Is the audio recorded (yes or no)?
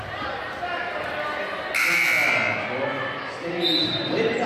yes